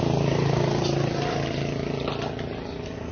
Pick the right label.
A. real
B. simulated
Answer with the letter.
A